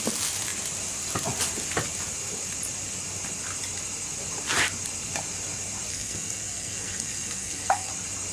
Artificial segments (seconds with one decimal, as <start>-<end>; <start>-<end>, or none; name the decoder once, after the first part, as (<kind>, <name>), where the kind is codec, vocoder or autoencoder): 5.9-7.9 (codec, SNAC)